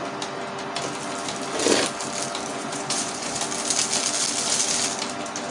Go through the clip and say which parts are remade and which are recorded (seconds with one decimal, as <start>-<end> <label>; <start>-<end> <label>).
0.0-2.5 recorded; 2.5-3.4 remade; 3.4-5.5 recorded